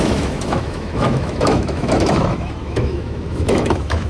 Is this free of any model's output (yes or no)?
no